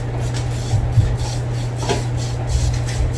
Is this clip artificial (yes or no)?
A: no